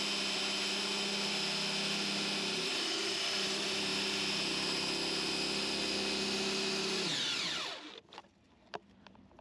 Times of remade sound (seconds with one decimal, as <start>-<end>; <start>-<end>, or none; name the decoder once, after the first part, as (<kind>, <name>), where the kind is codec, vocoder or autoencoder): none